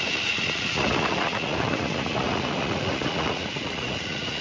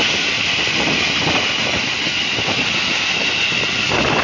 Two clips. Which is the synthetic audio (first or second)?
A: first